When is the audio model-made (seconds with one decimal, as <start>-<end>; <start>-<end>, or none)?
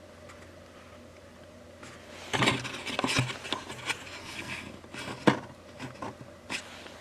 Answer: 4.2-4.7